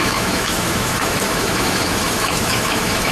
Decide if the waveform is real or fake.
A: fake